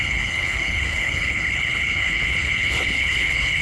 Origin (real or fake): fake